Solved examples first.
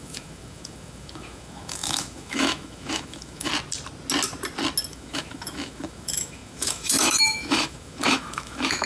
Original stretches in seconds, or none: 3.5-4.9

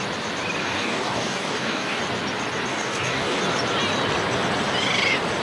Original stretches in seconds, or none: 0.0-0.6; 2.0-2.7; 3.4-5.4

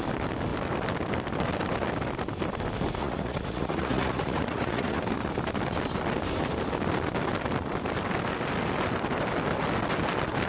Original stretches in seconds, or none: 0.0-3.0; 5.0-10.5